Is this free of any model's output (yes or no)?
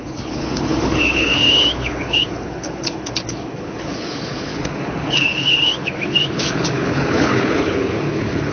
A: no